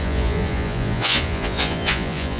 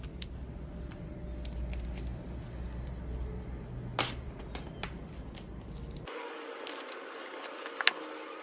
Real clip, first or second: second